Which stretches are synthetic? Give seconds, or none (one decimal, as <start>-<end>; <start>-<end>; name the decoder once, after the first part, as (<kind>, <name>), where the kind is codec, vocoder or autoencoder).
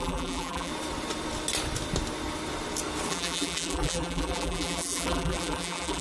0.0-0.7 (vocoder, BigVGAN v2); 3.1-6.0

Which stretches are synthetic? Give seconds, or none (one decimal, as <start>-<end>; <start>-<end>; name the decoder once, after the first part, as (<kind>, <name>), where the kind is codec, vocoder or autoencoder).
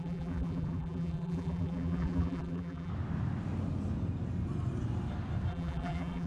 0.0-2.9 (vocoder, BigVGAN v2); 5.5-6.3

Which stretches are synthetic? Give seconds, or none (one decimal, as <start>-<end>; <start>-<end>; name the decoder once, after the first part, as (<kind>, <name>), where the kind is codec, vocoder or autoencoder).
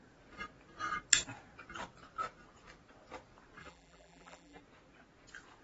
3.6-4.6 (vocoder, BigVGAN v2)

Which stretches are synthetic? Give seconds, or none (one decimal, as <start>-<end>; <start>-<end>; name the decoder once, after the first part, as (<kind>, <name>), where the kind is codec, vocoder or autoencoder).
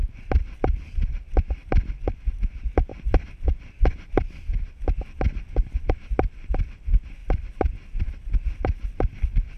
1.6-2.1 (vocoder, BigVGAN v2); 7.2-9.6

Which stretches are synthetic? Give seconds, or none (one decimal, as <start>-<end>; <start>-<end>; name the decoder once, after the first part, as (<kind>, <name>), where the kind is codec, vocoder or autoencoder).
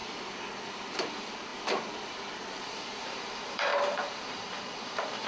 1.1-1.5 (vocoder, BigVGAN v2); 2.5-5.3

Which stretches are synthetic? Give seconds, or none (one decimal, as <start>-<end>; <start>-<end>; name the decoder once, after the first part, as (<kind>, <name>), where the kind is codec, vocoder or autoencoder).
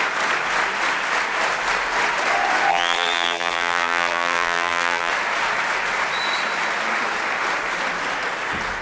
2.7-5.1 (vocoder, BigVGAN v2)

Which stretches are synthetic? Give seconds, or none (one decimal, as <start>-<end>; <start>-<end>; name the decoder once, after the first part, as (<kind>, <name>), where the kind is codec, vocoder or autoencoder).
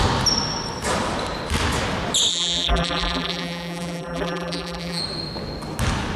2.3-5.0 (vocoder, BigVGAN v2)